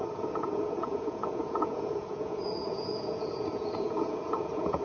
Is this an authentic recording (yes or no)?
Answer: no